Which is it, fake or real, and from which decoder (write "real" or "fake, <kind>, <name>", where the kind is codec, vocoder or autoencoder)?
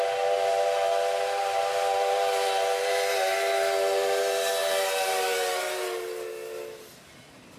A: real